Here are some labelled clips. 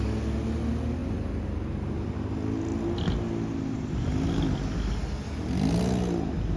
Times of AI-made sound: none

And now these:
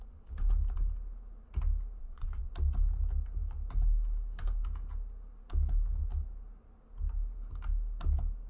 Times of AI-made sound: 2.0-2.5